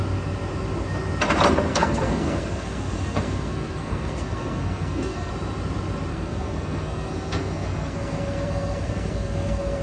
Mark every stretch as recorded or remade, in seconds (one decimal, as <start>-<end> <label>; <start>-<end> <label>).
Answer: 0.0-1.7 recorded; 1.7-5.3 remade; 5.3-6.1 recorded; 6.1-9.8 remade